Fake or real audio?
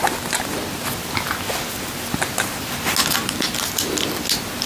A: real